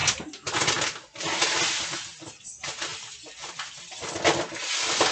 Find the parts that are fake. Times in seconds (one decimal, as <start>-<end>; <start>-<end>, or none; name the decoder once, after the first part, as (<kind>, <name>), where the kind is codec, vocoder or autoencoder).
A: none